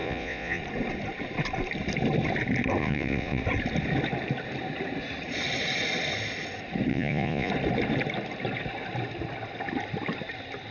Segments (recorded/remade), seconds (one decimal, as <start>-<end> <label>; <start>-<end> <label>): 0.0-0.6 remade; 0.6-2.8 recorded; 2.8-3.4 remade; 3.4-6.9 recorded; 6.9-7.5 remade; 7.5-10.7 recorded